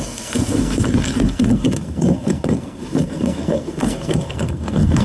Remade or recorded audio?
remade